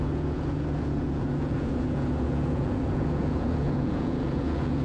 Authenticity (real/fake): fake